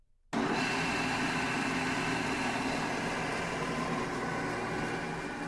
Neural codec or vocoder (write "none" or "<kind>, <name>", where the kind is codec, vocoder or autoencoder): none